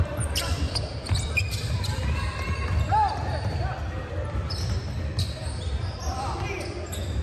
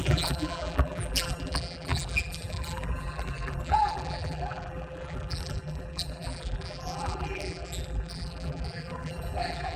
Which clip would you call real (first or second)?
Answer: first